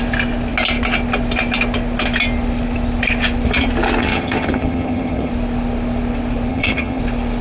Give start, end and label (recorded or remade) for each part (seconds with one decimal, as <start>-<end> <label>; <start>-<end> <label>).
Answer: 0.0-4.0 recorded; 4.0-5.3 remade; 5.3-6.5 recorded; 6.5-7.0 remade; 7.0-7.4 recorded